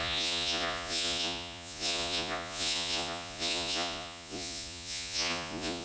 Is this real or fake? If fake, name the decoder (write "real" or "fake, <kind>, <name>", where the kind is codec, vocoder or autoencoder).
fake, vocoder, Vocos